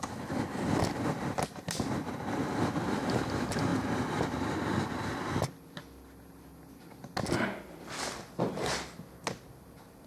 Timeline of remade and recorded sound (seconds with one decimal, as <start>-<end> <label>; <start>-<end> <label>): 0.0-10.1 recorded